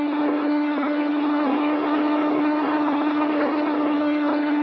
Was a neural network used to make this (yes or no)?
yes